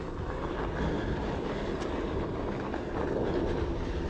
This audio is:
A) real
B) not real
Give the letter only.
A